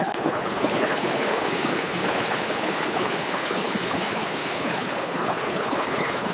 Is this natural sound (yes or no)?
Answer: no